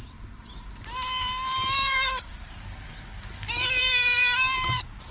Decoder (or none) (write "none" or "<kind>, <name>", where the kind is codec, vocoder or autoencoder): vocoder, BigVGAN v2